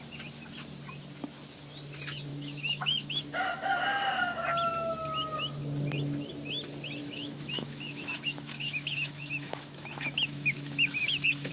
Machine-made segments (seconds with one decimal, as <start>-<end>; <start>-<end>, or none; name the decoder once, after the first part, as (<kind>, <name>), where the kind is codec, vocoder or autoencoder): 2.3-3.2 (autoencoder, DAC-VAE); 7.0-11.5